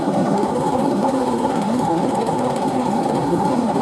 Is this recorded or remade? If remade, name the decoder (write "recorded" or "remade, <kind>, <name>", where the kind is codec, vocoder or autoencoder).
remade, codec, SNAC